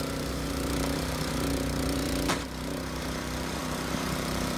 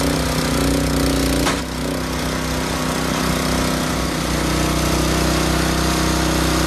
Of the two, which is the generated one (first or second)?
first